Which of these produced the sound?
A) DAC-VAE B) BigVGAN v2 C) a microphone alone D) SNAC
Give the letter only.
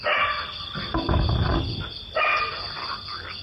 C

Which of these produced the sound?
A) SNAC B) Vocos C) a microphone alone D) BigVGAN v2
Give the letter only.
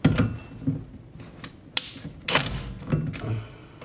C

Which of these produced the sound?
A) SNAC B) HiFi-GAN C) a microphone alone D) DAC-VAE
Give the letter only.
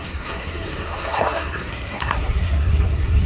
A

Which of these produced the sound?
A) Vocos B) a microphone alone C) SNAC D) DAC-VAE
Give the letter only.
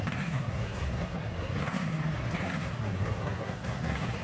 C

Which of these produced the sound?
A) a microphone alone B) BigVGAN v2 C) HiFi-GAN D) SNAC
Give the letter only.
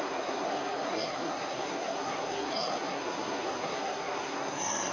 D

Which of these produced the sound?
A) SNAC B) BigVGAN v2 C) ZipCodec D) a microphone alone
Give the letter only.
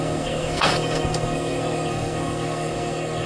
A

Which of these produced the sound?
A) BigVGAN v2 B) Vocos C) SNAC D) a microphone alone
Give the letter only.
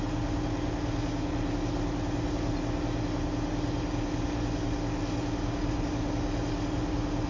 D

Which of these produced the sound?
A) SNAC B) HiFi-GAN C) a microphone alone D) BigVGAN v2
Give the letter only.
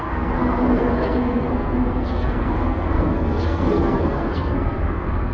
A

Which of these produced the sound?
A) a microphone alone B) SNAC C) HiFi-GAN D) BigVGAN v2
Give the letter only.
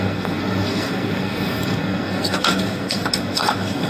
B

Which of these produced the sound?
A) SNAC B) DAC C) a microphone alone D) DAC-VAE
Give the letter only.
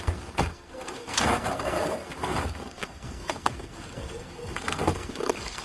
A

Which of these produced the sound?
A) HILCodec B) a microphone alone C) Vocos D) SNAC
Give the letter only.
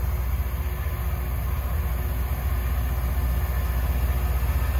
B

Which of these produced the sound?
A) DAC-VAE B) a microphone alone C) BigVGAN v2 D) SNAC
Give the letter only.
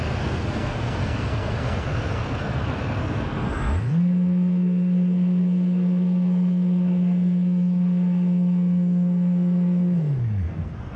D